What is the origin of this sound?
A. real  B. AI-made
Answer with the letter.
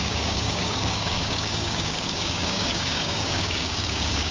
B